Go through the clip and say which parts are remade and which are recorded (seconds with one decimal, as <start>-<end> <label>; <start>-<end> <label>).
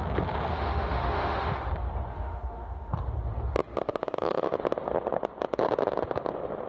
0.0-0.5 recorded; 0.5-1.7 remade; 1.7-2.1 recorded; 2.1-2.9 remade; 2.9-3.6 recorded; 3.6-4.6 remade; 4.6-6.7 recorded